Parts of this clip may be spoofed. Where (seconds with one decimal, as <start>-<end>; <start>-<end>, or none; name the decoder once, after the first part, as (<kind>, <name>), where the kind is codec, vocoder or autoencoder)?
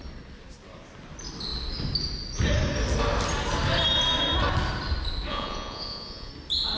5.3-6.3 (vocoder, Vocos)